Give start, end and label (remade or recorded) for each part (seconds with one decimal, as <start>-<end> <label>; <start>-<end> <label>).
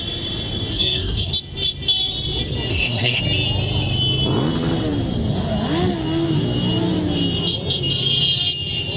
0.0-0.7 recorded; 0.7-1.3 remade; 1.3-2.7 recorded; 2.7-3.2 remade; 3.2-9.0 recorded